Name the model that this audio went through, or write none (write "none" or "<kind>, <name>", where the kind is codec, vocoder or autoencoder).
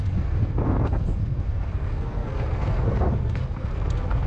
codec, SNAC